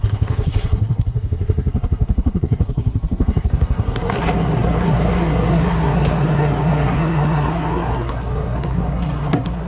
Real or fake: fake